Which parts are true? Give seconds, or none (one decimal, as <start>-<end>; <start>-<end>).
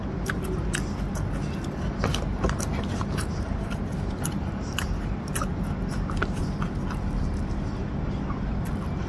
0.0-2.1; 6.4-9.1